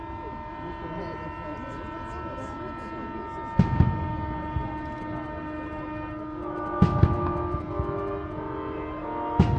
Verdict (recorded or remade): recorded